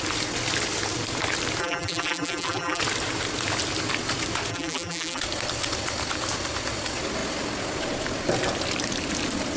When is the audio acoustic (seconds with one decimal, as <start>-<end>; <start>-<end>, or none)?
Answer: 0.0-1.6; 2.8-4.5; 5.2-9.6